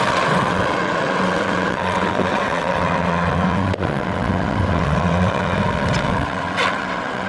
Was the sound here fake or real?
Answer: fake